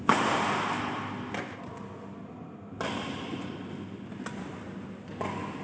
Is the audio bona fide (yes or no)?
yes